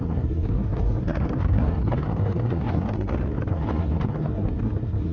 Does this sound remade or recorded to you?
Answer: remade